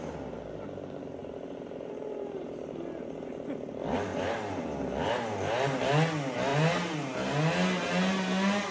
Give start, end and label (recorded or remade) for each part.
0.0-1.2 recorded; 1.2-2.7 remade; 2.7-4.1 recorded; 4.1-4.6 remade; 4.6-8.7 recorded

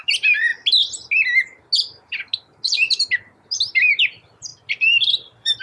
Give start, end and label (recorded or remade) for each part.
0.0-0.5 remade; 0.5-3.9 recorded; 3.9-5.6 remade

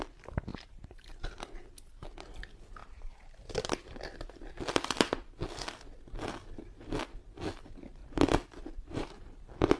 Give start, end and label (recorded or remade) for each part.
0.0-0.5 recorded; 0.5-1.3 remade; 1.3-2.8 recorded; 2.8-4.0 remade; 4.0-8.0 recorded; 8.0-9.1 remade; 9.1-9.8 recorded

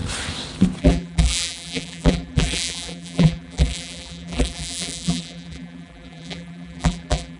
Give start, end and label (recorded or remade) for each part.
0.0-0.8 recorded; 0.8-7.4 remade

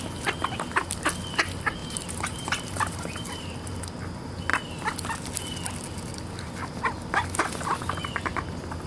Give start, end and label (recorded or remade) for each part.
0.0-1.8 recorded; 1.8-3.8 remade; 3.8-8.9 recorded

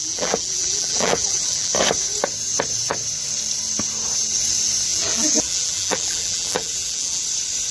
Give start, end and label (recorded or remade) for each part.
0.0-1.7 remade; 1.7-4.9 recorded; 4.9-7.2 remade; 7.2-7.7 recorded